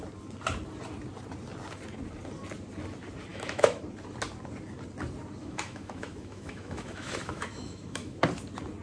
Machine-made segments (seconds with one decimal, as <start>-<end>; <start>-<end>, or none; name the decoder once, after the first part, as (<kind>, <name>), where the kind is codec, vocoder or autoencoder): 3.3-3.8 (autoencoder, DAC-VAE); 5.4-8.2